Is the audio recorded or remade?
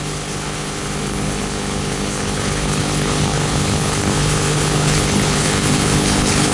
remade